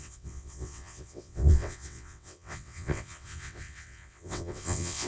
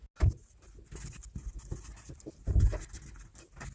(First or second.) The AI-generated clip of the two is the first